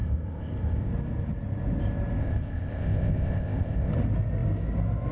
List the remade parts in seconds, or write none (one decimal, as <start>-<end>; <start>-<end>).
0.0-0.9; 2.2-3.9